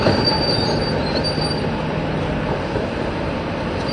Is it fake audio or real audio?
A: real